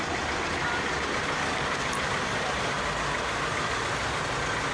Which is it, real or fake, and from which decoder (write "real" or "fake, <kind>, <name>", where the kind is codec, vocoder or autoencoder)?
real